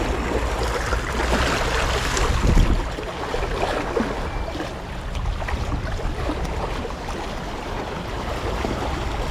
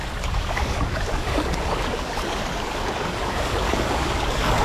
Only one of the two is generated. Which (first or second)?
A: second